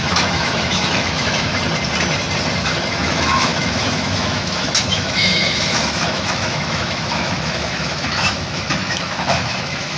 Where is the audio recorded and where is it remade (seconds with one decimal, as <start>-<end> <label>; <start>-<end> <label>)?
0.0-1.5 remade; 1.5-2.9 recorded; 2.9-10.0 remade